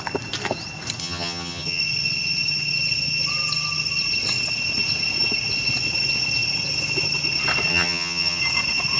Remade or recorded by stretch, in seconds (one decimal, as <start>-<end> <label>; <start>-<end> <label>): 0.0-1.0 recorded; 1.0-1.8 remade; 1.8-7.7 recorded; 7.7-8.4 remade; 8.4-9.0 recorded